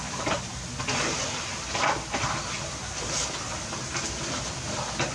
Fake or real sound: real